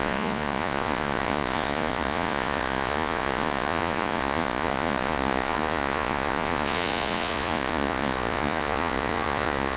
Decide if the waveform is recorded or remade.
remade